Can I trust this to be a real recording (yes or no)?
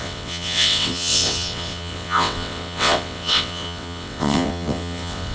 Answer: no